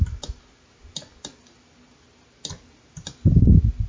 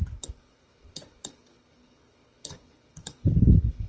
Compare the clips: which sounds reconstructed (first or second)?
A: second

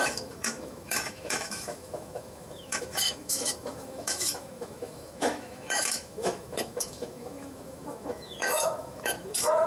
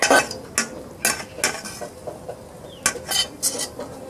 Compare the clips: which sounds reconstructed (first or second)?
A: first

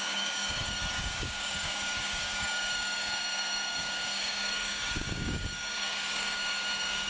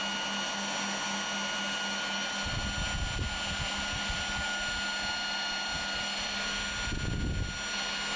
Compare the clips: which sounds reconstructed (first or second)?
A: first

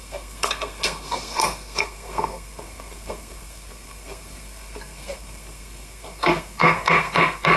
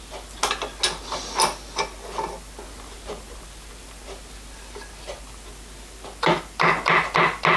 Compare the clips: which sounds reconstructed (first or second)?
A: first